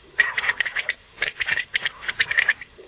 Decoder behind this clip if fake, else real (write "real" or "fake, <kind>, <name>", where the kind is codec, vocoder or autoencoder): fake, codec, SNAC